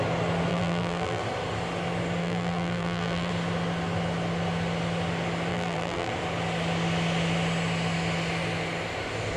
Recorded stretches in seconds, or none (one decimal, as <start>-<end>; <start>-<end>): 0.0-0.5; 1.2-2.2; 3.3-5.5; 6.1-9.4